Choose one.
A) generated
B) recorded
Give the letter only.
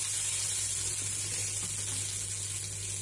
B